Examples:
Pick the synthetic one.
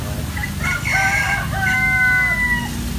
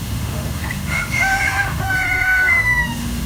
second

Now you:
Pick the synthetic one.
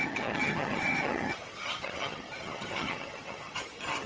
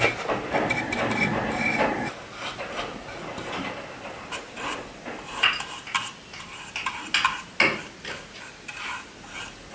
first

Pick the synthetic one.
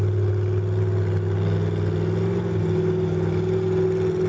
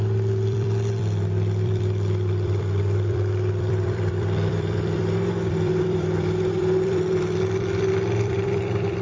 second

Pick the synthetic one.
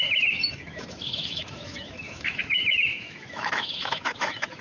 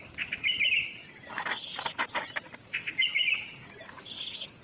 first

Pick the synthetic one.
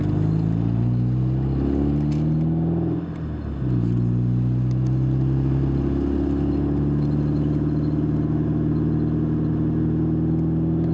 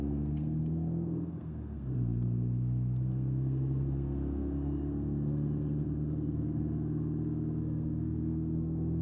second